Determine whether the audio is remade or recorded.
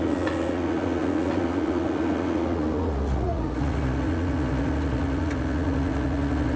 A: remade